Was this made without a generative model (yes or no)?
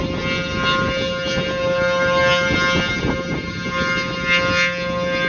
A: yes